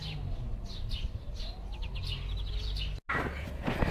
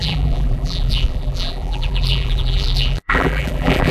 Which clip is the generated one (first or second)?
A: second